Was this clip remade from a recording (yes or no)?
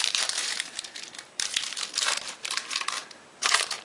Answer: yes